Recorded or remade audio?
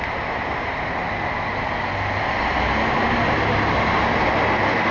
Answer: recorded